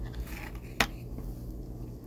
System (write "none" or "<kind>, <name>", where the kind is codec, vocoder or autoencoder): none